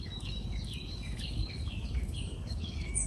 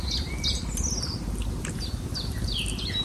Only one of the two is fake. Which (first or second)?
first